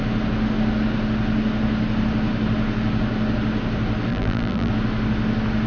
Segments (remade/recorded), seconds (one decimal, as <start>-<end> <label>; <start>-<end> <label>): 0.0-4.1 recorded; 4.1-4.7 remade; 4.7-5.7 recorded